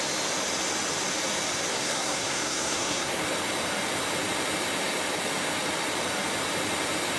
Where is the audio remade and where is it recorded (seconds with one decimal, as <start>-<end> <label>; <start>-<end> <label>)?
0.0-1.7 recorded; 1.7-3.2 remade; 3.2-7.2 recorded